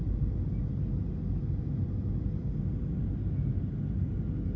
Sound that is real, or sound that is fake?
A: real